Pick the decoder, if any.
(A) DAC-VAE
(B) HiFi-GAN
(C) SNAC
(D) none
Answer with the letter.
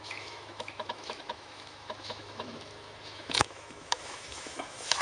A